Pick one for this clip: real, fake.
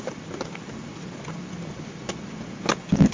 real